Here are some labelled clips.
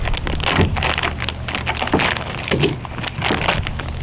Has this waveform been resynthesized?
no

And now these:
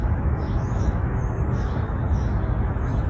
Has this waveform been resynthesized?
yes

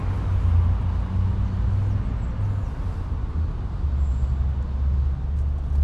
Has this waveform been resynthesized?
no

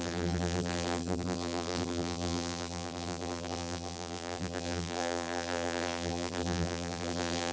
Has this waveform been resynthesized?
yes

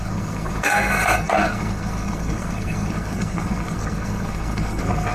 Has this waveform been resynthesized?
yes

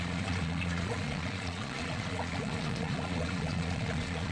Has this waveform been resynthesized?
yes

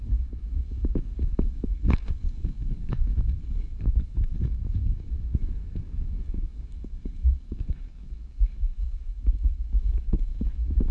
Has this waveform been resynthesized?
yes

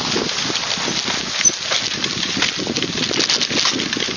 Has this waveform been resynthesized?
no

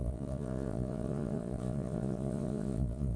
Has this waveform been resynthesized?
yes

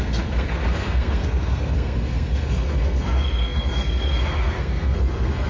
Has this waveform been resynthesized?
yes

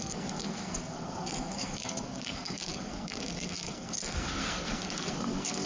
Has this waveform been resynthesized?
yes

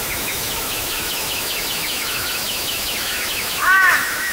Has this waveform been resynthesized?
yes